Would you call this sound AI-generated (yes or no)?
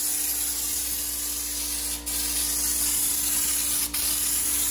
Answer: no